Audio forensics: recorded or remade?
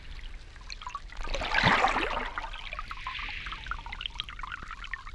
recorded